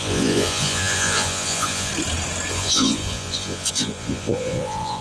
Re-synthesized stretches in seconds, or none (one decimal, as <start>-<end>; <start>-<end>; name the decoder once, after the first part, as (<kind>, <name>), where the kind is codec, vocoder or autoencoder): 0.0-1.9 (vocoder, Vocos); 2.5-5.0